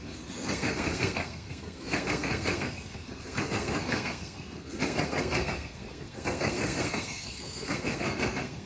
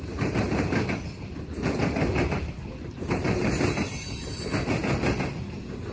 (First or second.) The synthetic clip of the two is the first